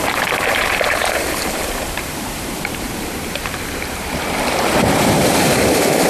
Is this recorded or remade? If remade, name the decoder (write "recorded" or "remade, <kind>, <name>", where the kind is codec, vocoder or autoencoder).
remade, vocoder, BigVGAN v2